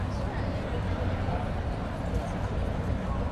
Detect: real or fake fake